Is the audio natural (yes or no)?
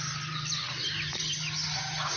yes